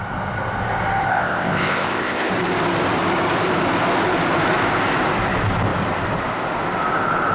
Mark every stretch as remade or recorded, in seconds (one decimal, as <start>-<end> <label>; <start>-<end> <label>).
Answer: 0.0-1.1 recorded; 1.1-2.3 remade; 2.3-7.3 recorded